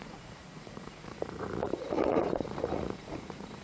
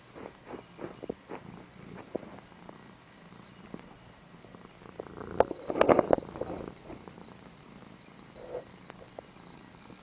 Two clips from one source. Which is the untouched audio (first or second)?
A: second